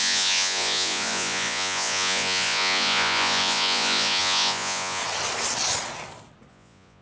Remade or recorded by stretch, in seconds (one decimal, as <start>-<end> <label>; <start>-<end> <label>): 0.0-5.0 remade; 5.0-6.5 recorded; 6.5-7.0 remade